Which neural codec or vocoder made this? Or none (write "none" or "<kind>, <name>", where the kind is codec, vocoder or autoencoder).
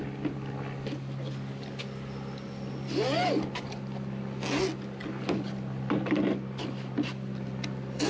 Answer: none